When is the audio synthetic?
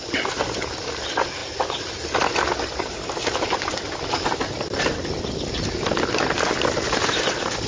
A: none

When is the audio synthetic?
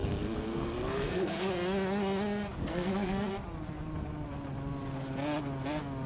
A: 0.0-1.5; 2.6-3.3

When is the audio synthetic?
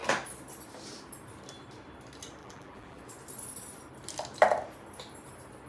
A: 2.4-3.0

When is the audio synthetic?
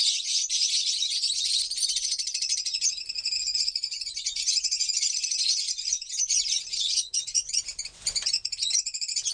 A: 0.0-9.3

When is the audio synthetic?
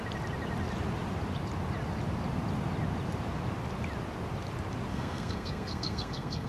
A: 4.9-6.5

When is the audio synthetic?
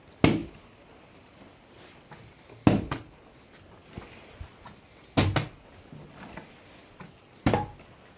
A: none